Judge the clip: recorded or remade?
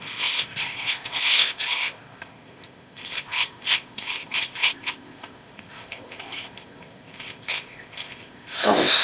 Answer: remade